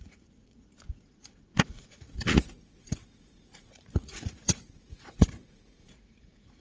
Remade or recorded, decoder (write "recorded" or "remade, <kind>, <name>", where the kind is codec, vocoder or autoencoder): remade, vocoder, Vocos